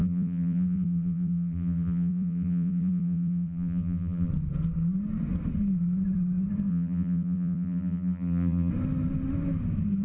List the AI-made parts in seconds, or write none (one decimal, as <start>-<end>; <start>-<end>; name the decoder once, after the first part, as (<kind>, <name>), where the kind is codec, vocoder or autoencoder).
0.0-4.3 (vocoder, BigVGAN v2); 6.7-8.7